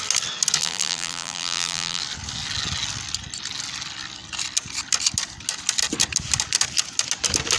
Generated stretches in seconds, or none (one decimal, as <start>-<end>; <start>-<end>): 0.6-2.0